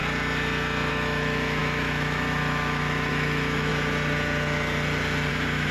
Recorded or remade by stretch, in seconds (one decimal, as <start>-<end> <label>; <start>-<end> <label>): 0.0-0.9 recorded; 0.9-3.7 remade; 3.7-5.3 recorded; 5.3-5.7 remade